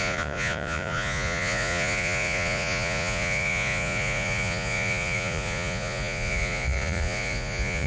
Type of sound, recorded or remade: remade